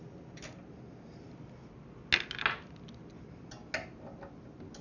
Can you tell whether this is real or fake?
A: real